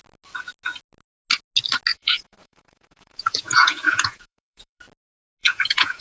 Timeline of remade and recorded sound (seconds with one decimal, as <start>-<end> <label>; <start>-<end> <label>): 0.0-1.9 recorded; 1.9-4.8 remade; 4.8-5.4 recorded; 5.4-6.0 remade